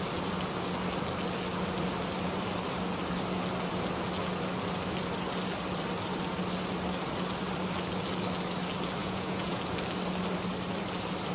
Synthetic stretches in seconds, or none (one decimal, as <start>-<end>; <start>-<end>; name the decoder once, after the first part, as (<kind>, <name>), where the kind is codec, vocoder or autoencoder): 9.0-9.6 (vocoder, Vocos)